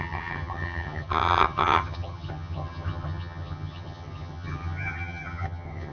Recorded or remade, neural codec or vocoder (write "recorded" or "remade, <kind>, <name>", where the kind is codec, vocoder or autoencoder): remade, vocoder, HiFi-GAN